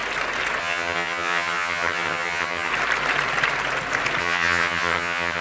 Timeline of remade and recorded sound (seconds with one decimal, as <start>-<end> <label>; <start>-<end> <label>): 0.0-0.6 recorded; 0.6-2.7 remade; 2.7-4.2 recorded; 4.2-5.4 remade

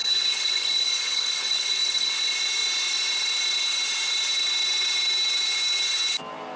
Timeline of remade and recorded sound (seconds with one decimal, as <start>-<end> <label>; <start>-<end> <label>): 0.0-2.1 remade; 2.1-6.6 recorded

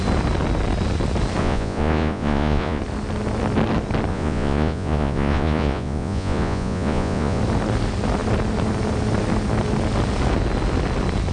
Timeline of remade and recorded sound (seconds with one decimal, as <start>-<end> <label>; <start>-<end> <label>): 0.0-1.4 recorded; 1.4-2.8 remade; 2.8-4.1 recorded; 4.1-7.4 remade; 7.4-11.3 recorded

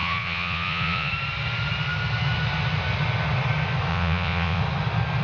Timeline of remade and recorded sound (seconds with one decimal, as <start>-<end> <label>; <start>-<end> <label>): 0.0-1.1 remade; 1.1-3.9 recorded; 3.9-4.6 remade; 4.6-5.2 recorded